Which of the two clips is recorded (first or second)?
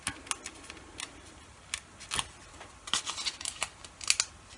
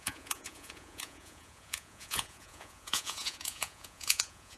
first